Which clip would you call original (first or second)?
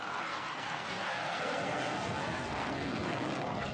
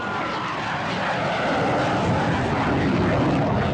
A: second